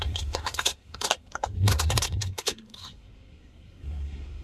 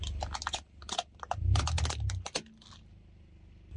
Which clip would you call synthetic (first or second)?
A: first